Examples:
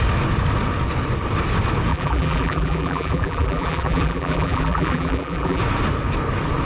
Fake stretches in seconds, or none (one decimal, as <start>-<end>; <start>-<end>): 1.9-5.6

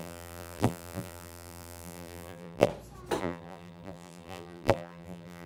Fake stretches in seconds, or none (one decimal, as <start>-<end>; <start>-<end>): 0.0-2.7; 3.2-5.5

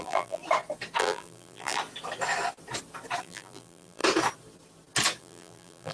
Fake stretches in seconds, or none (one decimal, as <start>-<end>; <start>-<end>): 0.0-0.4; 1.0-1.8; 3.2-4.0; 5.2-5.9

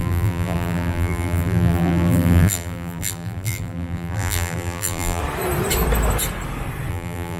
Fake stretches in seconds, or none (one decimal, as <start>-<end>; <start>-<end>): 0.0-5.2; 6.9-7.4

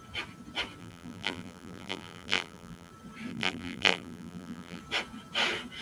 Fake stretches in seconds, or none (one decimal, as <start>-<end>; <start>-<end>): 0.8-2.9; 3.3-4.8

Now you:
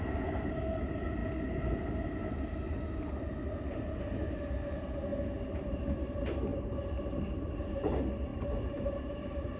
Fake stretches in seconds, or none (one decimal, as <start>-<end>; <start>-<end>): 6.5-7.9; 8.3-9.6

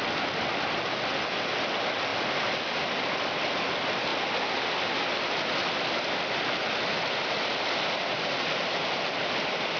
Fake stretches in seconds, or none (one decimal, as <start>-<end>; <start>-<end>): none